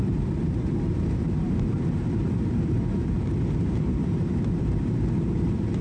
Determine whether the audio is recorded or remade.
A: remade